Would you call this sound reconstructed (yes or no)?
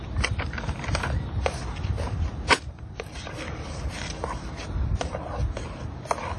no